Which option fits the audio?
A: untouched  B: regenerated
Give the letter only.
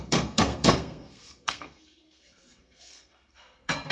B